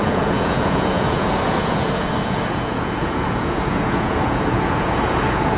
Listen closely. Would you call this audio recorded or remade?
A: remade